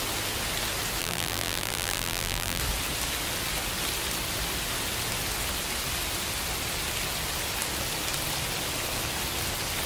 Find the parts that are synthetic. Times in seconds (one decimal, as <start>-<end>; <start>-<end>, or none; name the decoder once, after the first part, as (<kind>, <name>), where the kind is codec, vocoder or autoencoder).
1.0-2.6 (vocoder, BigVGAN v2)